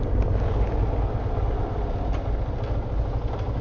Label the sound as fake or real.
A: real